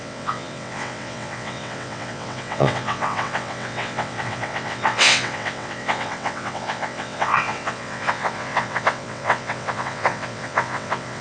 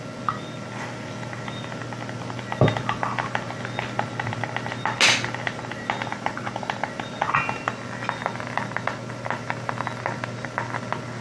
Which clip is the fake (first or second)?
first